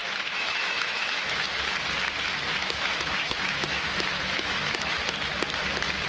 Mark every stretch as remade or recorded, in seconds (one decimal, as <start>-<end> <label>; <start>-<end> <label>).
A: 0.0-1.5 remade; 1.5-2.6 recorded; 2.6-5.0 remade; 5.0-6.1 recorded

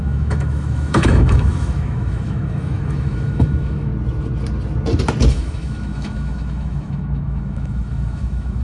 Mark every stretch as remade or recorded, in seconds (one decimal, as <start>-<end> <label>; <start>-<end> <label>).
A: 0.0-3.9 remade; 3.9-5.3 recorded; 5.3-8.6 remade